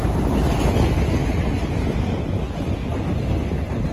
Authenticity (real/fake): real